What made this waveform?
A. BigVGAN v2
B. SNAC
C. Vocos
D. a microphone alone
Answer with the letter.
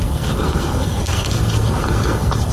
B